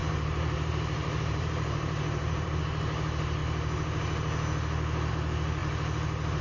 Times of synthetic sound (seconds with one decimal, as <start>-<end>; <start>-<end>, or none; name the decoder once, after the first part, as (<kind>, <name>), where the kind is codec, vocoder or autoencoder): 0.0-2.6 (vocoder, BigVGAN v2)